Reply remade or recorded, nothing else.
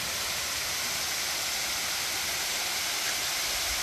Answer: recorded